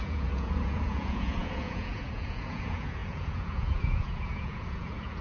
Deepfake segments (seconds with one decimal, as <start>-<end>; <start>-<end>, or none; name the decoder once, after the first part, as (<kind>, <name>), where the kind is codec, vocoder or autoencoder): 0.0-5.2 (vocoder, Vocos)